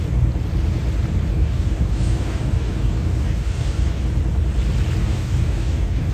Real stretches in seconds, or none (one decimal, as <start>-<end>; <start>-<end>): 0.0-1.3; 4.0-5.0